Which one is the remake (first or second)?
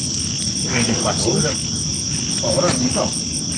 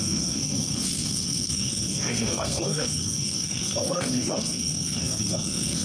second